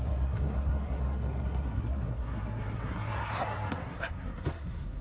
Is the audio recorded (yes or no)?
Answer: no